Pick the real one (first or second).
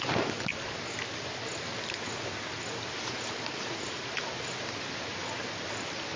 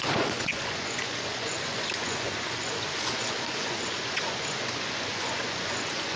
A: first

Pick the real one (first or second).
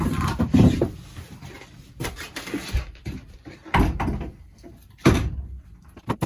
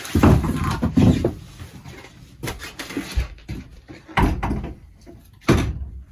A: second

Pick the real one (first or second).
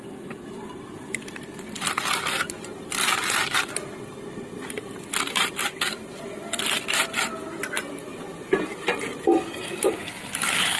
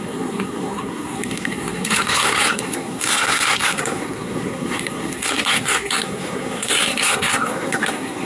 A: first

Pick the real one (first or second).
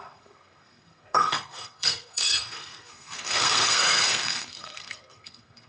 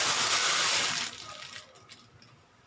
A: second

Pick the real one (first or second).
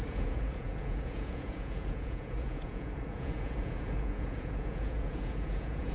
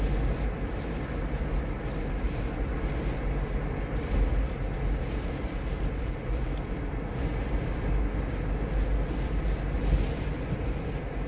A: second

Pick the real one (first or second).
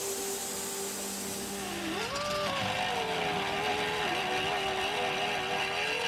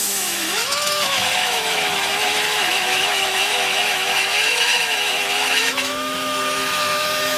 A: first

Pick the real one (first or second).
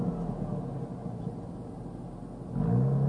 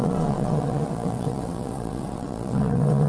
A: first